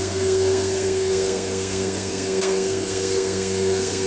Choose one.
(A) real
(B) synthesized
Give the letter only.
B